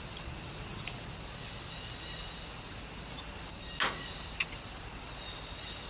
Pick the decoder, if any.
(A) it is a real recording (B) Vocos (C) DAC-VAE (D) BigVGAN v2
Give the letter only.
A